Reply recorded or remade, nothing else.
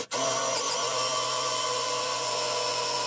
remade